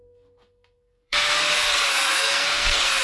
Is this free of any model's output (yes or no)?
no